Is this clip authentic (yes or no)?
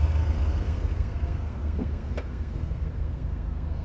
no